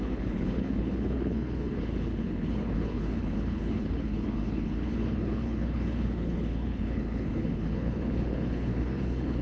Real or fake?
fake